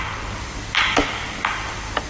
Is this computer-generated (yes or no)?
no